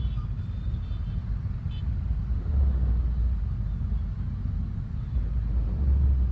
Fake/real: real